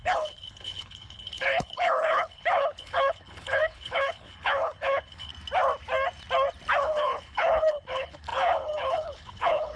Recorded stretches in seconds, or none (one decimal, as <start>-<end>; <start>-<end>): 5.3-6.8